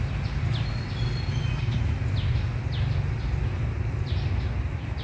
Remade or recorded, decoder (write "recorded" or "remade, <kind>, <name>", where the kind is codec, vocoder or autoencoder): recorded